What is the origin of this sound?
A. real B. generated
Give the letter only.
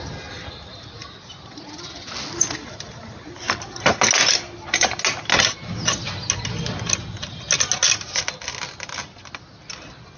A